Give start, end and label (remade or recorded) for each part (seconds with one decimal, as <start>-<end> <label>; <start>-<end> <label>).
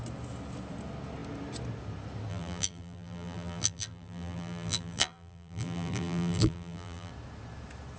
0.0-2.3 recorded; 2.3-7.1 remade; 7.1-8.0 recorded